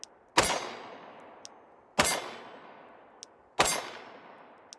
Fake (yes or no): no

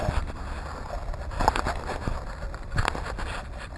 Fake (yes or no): no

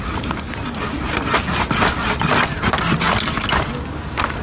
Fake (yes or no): no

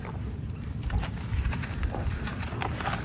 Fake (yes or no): yes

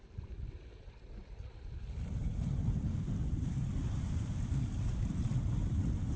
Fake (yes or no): yes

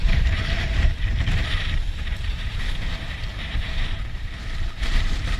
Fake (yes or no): yes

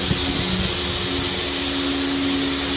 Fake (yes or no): no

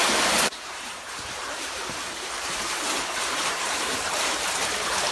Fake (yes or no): yes